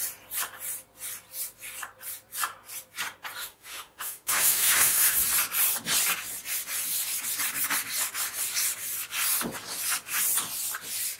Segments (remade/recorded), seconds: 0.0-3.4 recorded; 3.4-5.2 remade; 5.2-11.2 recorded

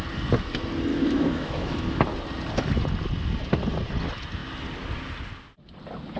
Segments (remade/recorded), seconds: 0.0-0.9 recorded; 0.9-2.0 remade; 2.0-6.2 recorded

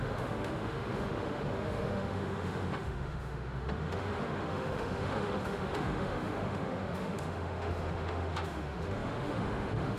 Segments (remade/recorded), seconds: 0.0-10.0 remade

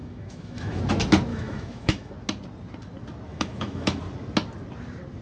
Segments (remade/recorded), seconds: 0.0-0.8 remade; 0.8-1.3 recorded; 1.3-2.1 remade; 2.1-3.3 recorded; 3.3-4.0 remade; 4.0-5.2 recorded

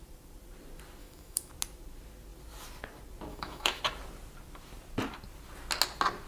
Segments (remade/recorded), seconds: 0.0-1.0 recorded; 1.0-1.5 remade; 1.5-3.3 recorded; 3.3-3.8 remade; 3.8-6.3 recorded

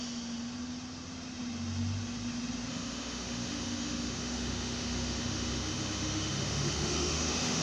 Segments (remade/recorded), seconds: 0.0-2.7 recorded; 2.7-7.6 remade

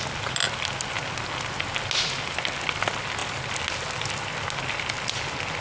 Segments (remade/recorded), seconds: 0.0-5.6 recorded

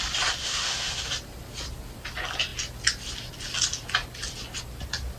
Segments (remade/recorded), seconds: 0.0-0.4 recorded; 0.4-1.1 remade; 1.1-5.2 recorded